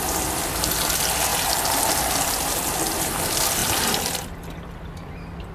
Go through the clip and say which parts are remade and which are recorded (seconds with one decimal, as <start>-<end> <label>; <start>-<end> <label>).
0.0-5.5 recorded